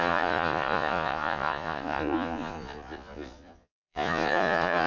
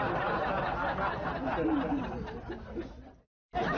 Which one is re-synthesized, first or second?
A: first